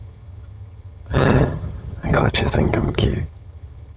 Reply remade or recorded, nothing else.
remade